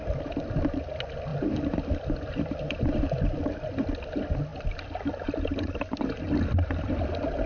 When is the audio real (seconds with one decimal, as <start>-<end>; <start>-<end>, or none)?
0.0-1.3; 3.4-4.5; 7.0-7.5